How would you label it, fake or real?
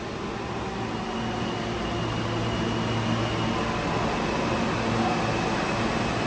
real